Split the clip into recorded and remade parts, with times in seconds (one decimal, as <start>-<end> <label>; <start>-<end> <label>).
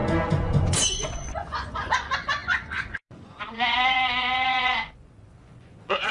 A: 0.0-6.1 remade